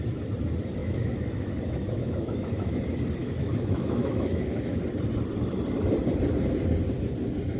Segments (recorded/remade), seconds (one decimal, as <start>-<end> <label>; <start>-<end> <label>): 0.0-0.8 recorded; 0.8-2.8 remade; 2.8-3.2 recorded; 3.2-4.8 remade; 4.8-7.6 recorded